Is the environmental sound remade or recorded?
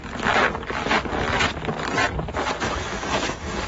recorded